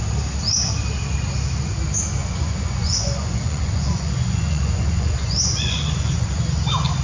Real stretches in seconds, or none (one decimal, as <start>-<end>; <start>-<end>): 0.0-2.2; 6.4-7.0